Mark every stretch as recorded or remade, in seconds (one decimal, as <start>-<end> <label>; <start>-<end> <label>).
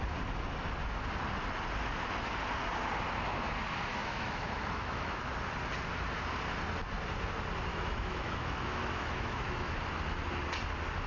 0.0-3.9 recorded; 3.9-5.3 remade; 5.3-7.7 recorded; 7.7-9.8 remade; 9.8-11.1 recorded